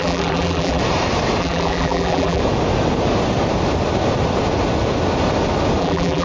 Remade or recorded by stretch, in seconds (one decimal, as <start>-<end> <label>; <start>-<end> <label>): 0.0-0.8 remade; 0.8-1.4 recorded; 1.4-2.4 remade; 2.4-5.8 recorded; 5.8-6.2 remade